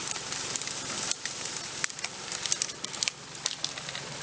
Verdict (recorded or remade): recorded